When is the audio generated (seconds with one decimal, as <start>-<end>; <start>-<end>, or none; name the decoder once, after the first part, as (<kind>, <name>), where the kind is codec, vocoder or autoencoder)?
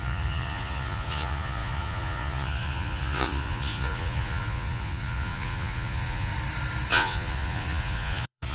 0.0-6.3 (vocoder, Vocos); 6.9-8.5